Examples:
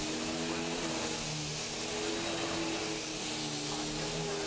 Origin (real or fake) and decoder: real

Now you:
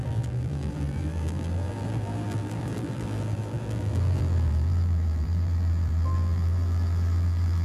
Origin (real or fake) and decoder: fake, vocoder, BigVGAN v2